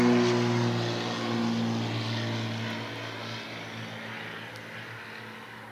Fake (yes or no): no